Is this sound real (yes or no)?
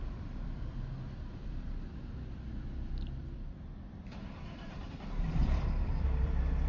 no